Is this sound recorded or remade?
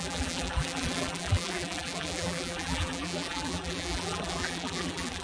remade